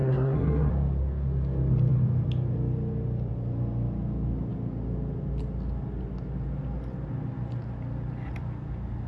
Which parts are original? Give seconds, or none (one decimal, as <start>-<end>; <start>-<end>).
0.7-9.1